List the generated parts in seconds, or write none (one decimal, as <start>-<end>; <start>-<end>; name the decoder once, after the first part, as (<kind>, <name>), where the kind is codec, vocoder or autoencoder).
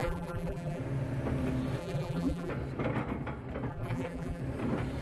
0.0-0.8 (vocoder, BigVGAN v2); 1.8-2.5; 3.7-4.4